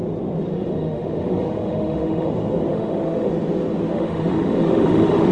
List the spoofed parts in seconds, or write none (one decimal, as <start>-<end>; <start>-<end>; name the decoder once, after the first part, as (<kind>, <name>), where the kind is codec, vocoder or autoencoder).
0.5-2.3 (autoencoder, DAC-VAE); 2.7-3.3; 3.9-5.3